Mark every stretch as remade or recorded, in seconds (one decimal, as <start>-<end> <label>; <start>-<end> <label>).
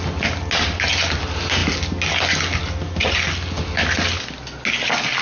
0.0-5.2 recorded